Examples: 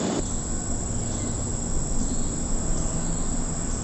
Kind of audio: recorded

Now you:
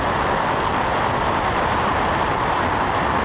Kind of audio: recorded